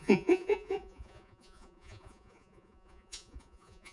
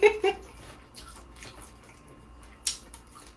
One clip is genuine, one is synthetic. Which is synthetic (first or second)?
first